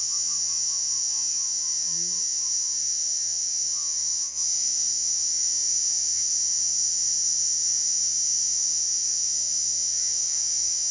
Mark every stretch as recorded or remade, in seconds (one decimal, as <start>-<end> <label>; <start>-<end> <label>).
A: 0.0-10.9 remade